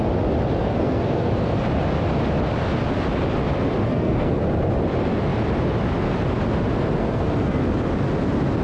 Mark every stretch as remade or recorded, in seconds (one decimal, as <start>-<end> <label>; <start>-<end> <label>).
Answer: 0.0-0.6 recorded; 0.6-1.6 remade; 1.6-3.8 recorded; 3.8-4.4 remade; 4.4-7.0 recorded; 7.0-7.6 remade; 7.6-8.6 recorded